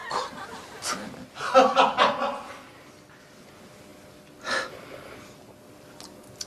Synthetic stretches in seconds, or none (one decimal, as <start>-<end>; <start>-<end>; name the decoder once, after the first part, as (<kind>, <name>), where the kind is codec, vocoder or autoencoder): none